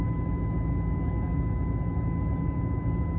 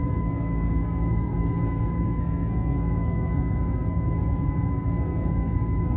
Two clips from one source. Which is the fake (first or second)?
second